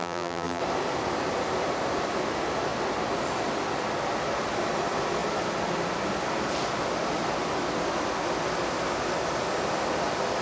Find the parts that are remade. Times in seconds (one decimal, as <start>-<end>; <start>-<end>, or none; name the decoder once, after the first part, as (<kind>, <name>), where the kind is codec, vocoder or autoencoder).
0.0-0.6 (vocoder, BigVGAN v2)